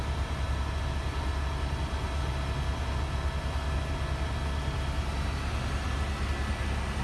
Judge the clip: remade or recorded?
recorded